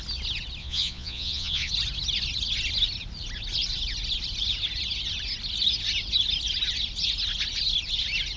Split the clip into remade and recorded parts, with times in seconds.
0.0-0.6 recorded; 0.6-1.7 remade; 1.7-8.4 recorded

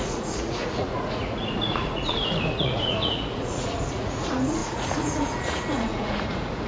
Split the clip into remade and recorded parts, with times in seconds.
0.0-6.7 remade

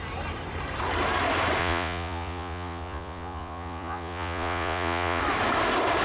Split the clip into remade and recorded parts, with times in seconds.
0.0-1.6 recorded; 1.6-5.2 remade; 5.2-6.0 recorded

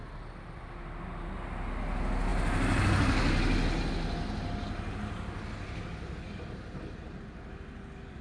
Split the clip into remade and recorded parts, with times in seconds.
0.0-8.2 recorded

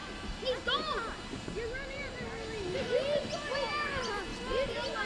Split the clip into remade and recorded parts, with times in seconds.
0.0-5.0 recorded

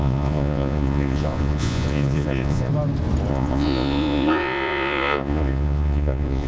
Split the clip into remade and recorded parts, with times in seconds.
0.0-2.7 remade; 2.7-3.3 recorded; 3.3-6.5 remade